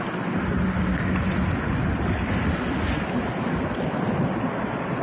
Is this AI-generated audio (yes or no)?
no